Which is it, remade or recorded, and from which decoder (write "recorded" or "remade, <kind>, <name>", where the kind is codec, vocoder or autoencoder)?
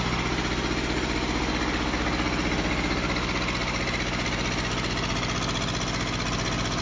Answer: recorded